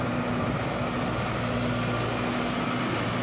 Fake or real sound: real